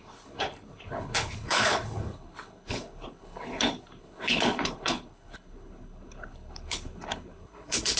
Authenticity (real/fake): fake